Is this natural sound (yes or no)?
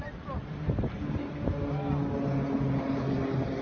yes